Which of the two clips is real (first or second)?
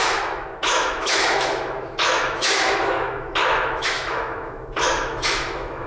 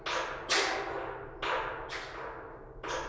second